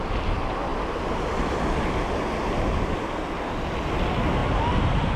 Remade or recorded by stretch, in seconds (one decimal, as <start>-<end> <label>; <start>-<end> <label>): 0.0-5.2 recorded